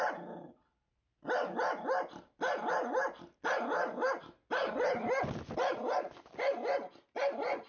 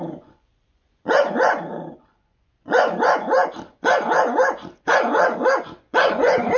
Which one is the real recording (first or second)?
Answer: first